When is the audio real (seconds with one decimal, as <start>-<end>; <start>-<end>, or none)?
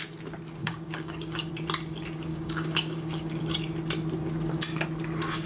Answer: 0.0-0.6; 1.5-2.3; 3.5-5.5